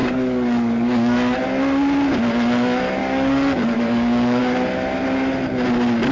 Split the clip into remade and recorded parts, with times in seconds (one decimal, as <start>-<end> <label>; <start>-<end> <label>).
0.0-1.4 remade; 1.4-3.0 recorded; 3.0-4.4 remade; 4.4-6.1 recorded

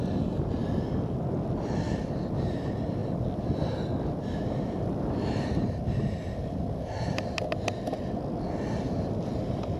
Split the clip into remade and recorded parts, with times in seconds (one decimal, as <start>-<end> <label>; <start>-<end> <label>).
0.0-9.8 recorded

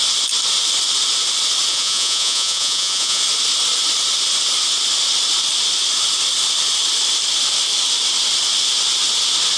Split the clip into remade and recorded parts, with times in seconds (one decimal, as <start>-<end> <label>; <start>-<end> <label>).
0.0-1.7 recorded; 1.7-3.2 remade; 3.2-9.6 recorded

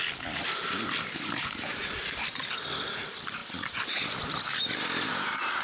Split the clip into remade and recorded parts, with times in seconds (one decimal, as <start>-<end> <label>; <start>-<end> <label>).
0.0-5.6 recorded